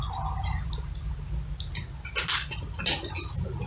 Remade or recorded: recorded